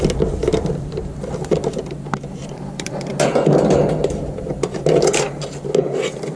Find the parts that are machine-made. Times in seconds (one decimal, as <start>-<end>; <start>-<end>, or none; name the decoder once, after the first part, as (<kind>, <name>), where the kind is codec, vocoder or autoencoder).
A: 2.4-3.1 (vocoder, BigVGAN v2); 4.0-4.7

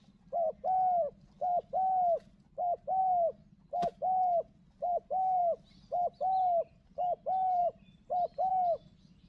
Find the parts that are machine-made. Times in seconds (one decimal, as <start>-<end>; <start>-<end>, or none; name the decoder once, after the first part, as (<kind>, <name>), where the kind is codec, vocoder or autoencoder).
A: 7.6-8.5 (vocoder, BigVGAN v2)

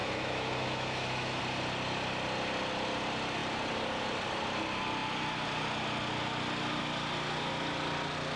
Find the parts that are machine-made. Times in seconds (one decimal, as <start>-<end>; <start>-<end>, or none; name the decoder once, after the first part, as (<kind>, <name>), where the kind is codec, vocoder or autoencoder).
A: 0.0-1.4 (autoencoder, DAC-VAE)

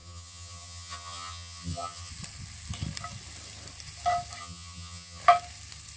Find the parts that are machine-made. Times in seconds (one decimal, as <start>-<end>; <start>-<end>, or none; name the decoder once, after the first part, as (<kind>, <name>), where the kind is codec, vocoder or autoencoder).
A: 0.0-2.1 (vocoder, HiFi-GAN); 4.4-5.2

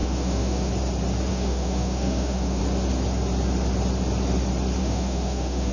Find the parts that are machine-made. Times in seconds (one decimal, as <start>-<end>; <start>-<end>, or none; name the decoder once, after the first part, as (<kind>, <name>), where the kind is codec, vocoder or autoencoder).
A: 0.0-0.7 (autoencoder, DAC-VAE); 1.3-2.6; 4.8-5.7

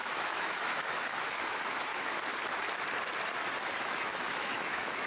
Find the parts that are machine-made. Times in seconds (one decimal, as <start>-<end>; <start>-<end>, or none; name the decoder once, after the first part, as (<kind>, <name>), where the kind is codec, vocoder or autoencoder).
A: 0.0-1.9 (autoencoder, DAC-VAE); 3.8-5.1

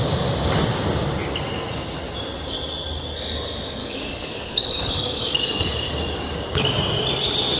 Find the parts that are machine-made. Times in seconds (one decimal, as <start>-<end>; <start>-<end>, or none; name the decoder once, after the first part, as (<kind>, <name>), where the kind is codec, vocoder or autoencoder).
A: 3.8-6.8 (codec, DAC)

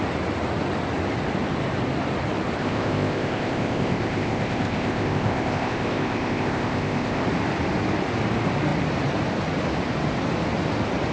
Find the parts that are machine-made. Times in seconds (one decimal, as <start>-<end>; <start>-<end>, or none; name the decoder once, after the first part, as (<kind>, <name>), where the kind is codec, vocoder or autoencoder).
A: 2.6-7.2 (codec, ZipCodec)